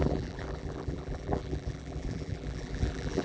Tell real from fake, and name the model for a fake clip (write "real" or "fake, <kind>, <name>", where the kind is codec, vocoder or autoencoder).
fake, vocoder, BigVGAN v2